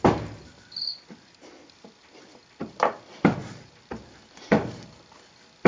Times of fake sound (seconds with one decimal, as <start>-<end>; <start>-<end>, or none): 2.4-3.4; 4.6-5.7